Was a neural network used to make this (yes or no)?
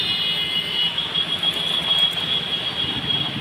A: no